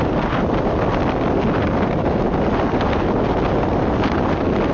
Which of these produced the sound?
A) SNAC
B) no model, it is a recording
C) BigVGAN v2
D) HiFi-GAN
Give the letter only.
B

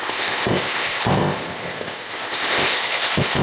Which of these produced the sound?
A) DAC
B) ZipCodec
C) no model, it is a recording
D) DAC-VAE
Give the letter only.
B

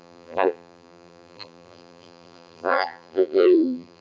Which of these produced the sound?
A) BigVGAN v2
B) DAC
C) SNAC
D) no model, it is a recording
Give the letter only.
A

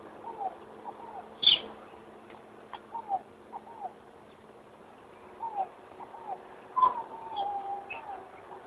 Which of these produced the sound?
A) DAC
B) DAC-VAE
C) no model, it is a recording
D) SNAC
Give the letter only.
C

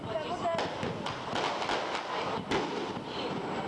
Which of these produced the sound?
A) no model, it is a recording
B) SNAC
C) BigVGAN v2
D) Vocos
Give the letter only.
A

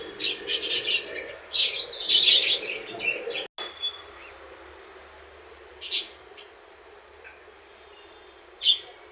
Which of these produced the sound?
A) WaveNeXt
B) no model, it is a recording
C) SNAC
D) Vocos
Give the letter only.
B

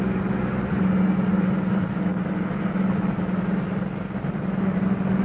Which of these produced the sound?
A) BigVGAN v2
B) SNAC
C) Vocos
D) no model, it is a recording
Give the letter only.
D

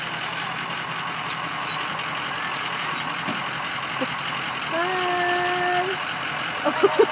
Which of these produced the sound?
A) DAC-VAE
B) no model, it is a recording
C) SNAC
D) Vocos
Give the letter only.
B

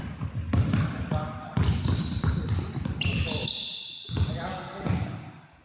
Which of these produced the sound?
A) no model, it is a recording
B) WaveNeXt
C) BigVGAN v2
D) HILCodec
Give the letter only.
C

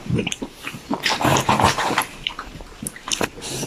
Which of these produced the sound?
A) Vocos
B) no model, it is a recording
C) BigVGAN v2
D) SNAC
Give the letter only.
C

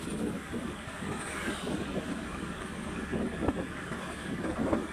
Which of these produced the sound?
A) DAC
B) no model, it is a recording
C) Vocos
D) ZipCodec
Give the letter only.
A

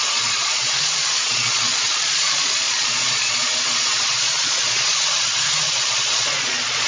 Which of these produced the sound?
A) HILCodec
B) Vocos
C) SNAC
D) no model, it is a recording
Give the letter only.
B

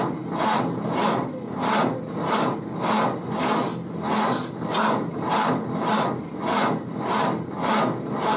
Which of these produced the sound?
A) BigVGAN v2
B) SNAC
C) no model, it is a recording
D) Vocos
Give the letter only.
C